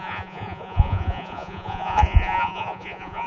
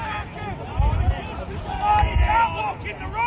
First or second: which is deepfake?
first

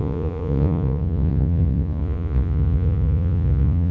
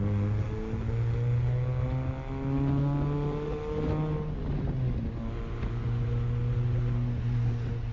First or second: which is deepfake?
first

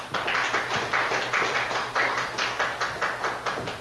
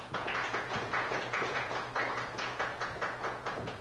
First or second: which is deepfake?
second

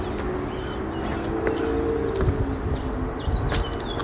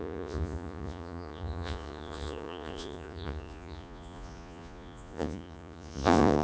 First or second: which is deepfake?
second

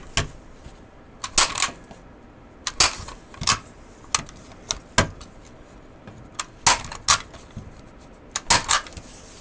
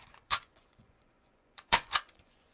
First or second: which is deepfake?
second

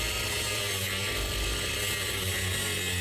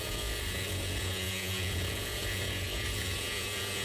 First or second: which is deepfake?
second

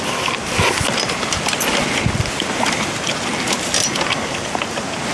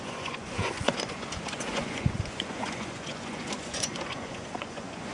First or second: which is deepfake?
second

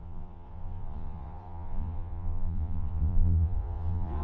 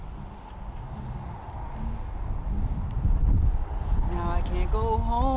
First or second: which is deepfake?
first